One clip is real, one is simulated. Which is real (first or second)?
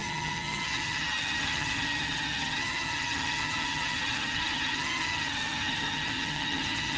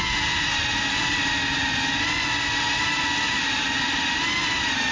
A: second